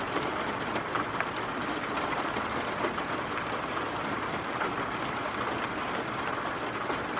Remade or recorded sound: recorded